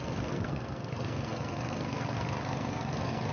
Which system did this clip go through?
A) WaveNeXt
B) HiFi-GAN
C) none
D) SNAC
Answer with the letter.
D